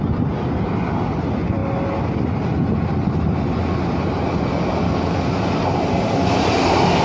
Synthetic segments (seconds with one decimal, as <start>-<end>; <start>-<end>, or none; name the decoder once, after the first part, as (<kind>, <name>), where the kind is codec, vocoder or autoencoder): none

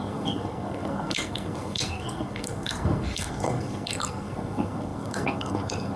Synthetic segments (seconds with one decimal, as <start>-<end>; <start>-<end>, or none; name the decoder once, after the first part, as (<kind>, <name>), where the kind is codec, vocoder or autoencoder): 0.0-6.0 (codec, SNAC)

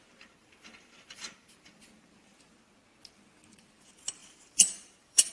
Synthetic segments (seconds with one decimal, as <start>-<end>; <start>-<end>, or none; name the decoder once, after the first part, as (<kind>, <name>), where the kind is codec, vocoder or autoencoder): 0.4-1.8 (vocoder, BigVGAN v2); 4.2-5.3